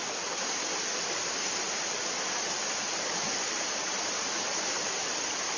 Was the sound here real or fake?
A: real